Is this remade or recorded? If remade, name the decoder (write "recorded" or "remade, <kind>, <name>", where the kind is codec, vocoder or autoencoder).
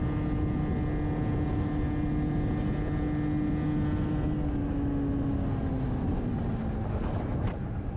recorded